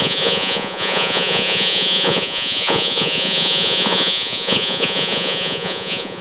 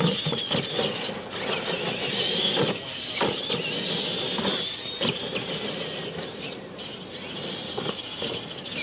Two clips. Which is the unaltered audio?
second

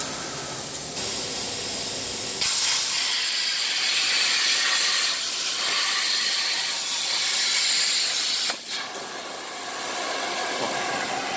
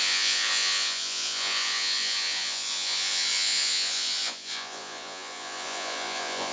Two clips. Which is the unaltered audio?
first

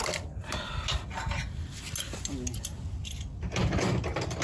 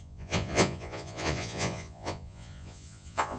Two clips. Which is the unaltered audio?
first